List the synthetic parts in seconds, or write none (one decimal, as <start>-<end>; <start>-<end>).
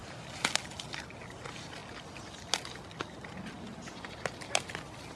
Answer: none